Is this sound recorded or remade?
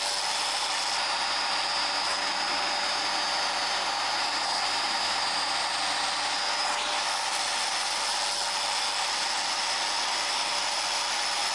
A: recorded